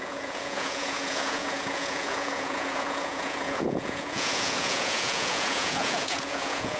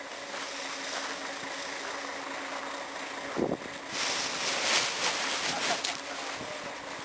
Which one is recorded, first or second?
second